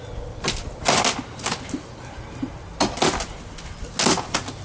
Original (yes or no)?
yes